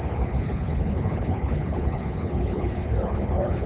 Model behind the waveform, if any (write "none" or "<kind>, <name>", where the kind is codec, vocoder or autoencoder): codec, HILCodec